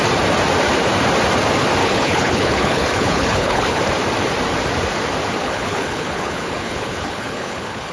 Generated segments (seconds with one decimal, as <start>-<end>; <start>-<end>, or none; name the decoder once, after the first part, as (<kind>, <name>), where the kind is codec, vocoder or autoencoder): 1.8-3.8 (codec, HILCodec); 5.4-7.9